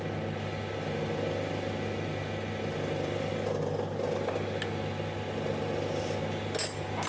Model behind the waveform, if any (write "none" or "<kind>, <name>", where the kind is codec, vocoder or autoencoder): none